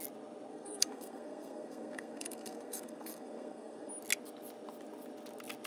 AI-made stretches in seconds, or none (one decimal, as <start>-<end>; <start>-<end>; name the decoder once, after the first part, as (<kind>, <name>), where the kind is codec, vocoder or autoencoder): 0.5-3.9 (codec, SNAC)